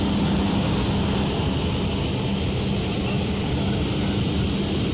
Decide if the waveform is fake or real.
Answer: real